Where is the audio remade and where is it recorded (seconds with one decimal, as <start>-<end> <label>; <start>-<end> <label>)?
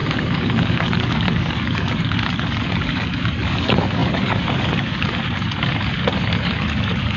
0.0-7.2 remade